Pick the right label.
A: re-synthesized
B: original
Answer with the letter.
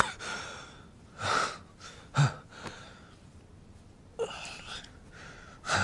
B